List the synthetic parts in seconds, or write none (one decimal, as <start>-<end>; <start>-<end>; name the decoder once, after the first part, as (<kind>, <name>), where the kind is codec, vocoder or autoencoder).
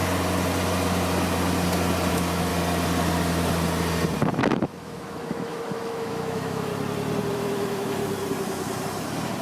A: 2.1-2.5 (autoencoder, DAC-VAE); 4.4-6.7; 7.3-8.0